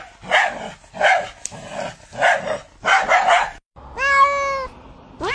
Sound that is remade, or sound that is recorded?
recorded